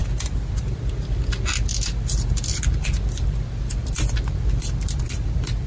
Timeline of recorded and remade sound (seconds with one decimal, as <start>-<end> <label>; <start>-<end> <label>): 0.0-1.7 recorded; 1.7-4.9 remade; 4.9-5.7 recorded